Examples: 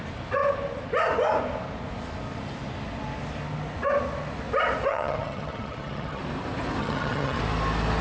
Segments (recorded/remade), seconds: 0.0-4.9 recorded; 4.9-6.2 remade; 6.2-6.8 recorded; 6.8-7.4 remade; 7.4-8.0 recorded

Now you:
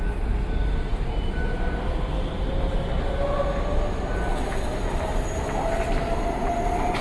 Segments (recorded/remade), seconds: 0.0-7.0 recorded